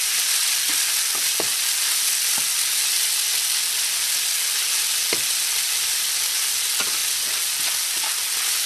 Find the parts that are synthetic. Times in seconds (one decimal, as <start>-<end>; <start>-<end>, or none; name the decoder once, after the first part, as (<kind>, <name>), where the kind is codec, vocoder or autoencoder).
none